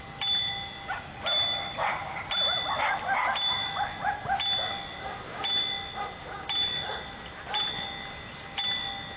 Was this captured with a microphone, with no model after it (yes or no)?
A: yes